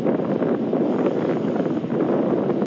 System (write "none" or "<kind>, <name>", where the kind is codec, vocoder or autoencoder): none